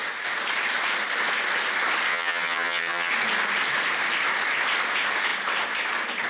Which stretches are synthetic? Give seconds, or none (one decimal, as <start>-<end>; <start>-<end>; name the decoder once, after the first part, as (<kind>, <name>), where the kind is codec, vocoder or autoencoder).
2.1-3.1 (vocoder, HiFi-GAN)